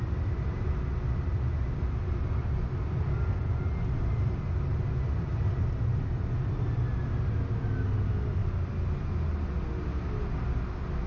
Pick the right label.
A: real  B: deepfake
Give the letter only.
A